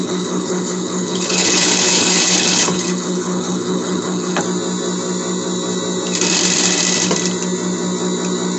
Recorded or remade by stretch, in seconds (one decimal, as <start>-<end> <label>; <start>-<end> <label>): 0.0-4.4 remade; 4.4-8.6 recorded